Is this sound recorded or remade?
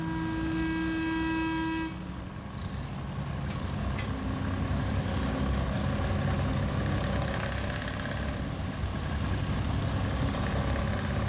recorded